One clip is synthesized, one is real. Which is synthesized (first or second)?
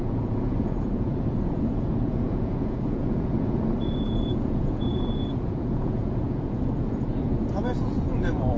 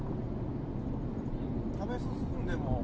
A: first